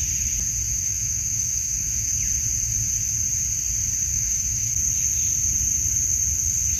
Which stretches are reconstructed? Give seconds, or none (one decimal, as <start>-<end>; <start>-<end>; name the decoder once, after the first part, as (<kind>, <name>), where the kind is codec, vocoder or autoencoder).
0.7-2.2 (autoencoder, DAC-VAE); 4.1-4.7